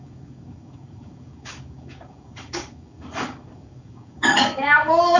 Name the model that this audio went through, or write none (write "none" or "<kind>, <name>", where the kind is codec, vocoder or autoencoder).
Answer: codec, DAC